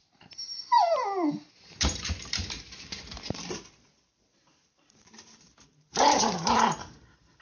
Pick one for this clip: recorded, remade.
remade